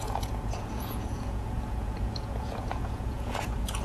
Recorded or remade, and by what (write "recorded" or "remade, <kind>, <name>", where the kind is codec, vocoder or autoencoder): remade, vocoder, Vocos